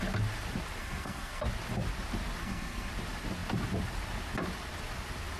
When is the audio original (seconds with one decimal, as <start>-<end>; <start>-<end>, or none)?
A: 0.0-0.8; 1.4-2.4; 2.9-5.4